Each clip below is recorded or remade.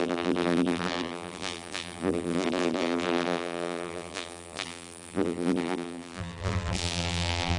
remade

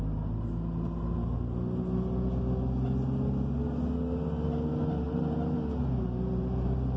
recorded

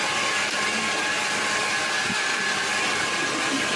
recorded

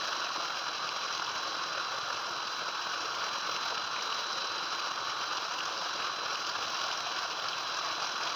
recorded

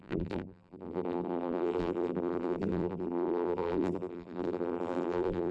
remade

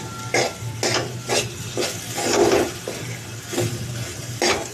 recorded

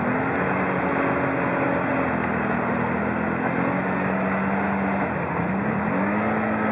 recorded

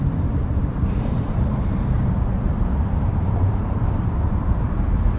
remade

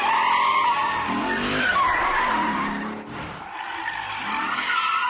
remade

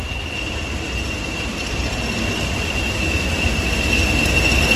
recorded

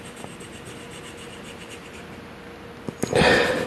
recorded